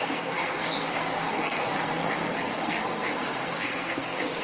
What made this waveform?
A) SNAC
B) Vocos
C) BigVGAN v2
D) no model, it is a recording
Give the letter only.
A